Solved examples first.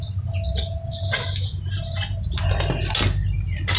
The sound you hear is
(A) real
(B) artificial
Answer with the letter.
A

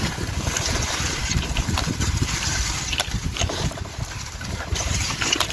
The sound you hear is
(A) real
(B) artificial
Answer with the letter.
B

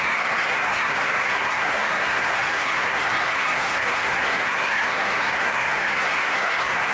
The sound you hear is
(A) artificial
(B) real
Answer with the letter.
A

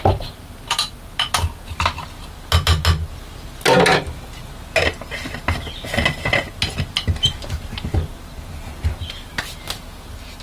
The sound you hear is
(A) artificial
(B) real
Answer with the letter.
B